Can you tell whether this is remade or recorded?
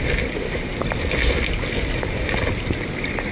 recorded